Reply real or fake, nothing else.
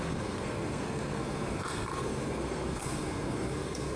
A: fake